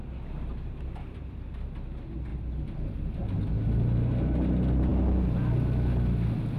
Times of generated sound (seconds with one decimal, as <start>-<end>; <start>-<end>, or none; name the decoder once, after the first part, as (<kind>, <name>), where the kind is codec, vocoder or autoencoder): none